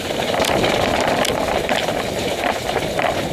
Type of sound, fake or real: real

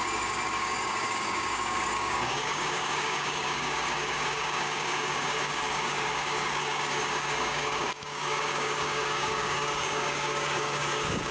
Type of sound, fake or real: fake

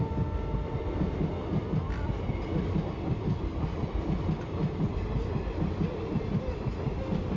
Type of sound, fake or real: real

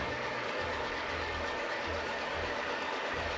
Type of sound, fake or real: fake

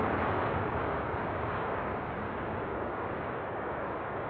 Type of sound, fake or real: fake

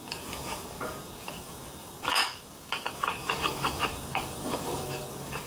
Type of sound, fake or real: fake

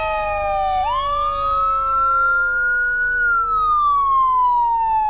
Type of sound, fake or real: real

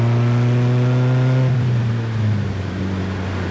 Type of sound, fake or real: real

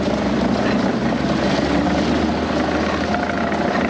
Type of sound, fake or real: real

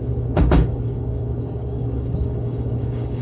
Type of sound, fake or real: fake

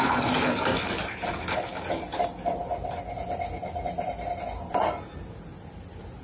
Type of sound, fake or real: real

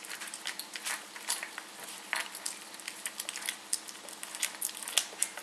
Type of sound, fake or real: real